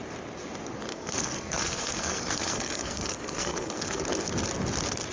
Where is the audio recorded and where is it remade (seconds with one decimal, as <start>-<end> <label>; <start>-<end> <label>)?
0.0-0.9 recorded; 0.9-4.0 remade; 4.0-5.1 recorded